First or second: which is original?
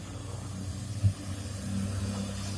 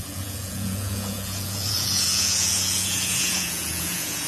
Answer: first